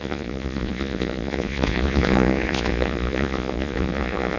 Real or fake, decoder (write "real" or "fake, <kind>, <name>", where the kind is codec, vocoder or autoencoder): fake, vocoder, Vocos